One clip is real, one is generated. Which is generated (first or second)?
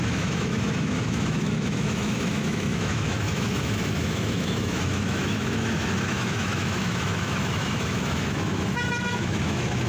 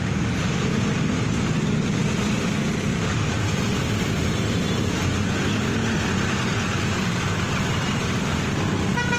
first